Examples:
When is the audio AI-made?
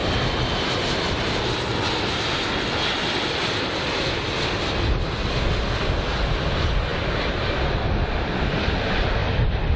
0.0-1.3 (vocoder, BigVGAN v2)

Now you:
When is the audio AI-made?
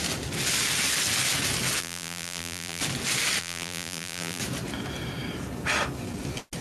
1.8-2.8 (vocoder, BigVGAN v2); 3.4-4.4